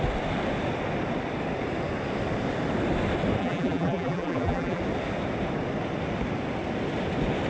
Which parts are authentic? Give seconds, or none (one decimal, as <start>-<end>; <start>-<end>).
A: 0.0-3.4; 4.8-7.5